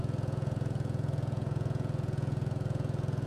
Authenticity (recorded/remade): remade